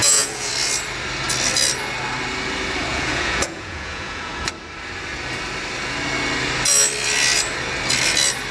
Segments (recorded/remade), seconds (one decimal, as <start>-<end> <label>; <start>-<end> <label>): 0.0-0.5 remade; 0.5-2.9 recorded; 2.9-4.5 remade; 4.5-8.5 recorded